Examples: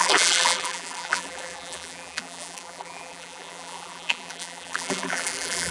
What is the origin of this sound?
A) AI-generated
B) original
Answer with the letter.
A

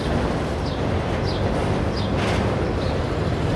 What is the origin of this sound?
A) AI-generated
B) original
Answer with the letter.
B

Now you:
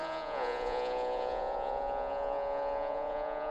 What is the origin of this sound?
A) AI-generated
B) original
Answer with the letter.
A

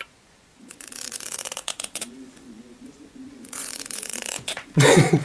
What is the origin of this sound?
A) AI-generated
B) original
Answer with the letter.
A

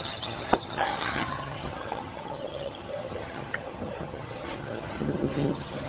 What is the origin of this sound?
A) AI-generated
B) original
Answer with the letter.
A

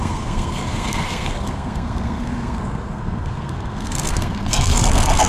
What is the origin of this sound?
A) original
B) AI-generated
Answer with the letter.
B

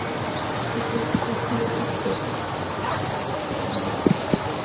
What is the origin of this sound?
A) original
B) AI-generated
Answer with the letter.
A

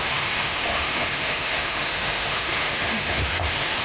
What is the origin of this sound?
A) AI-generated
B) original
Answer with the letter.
A